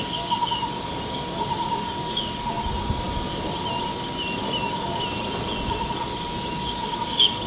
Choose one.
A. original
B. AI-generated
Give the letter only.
A